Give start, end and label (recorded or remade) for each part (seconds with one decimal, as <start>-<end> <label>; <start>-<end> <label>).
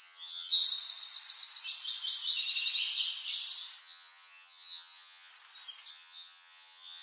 0.0-0.6 remade; 0.6-3.8 recorded; 3.8-5.3 remade; 5.3-5.9 recorded; 5.9-7.0 remade